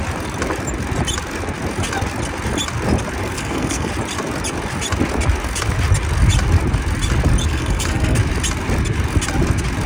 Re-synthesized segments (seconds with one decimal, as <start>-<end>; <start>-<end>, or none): 3.2-3.9; 7.4-8.2